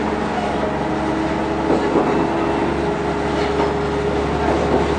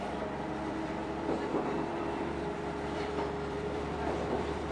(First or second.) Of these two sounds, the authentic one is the first